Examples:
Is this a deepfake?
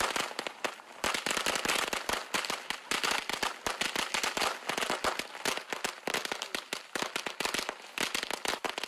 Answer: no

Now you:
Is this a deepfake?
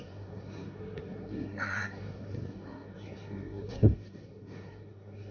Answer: yes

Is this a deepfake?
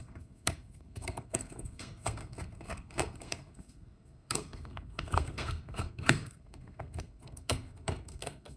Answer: yes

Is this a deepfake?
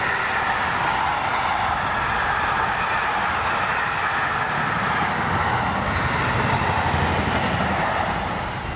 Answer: no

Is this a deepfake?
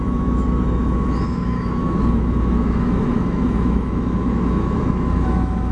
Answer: yes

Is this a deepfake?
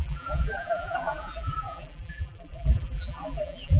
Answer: yes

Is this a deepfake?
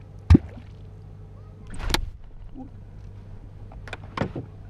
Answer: no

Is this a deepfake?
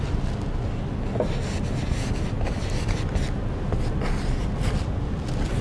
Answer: no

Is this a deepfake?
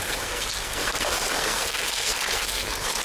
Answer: yes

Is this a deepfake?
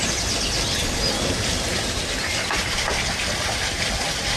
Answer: no